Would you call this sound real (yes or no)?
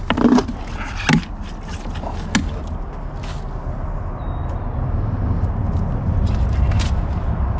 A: yes